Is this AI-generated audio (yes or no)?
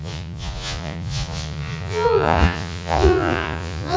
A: yes